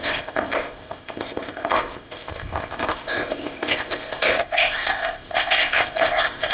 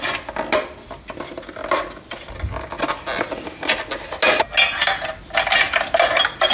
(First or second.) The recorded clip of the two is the second